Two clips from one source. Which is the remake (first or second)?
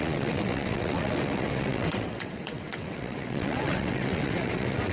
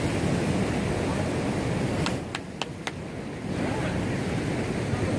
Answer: first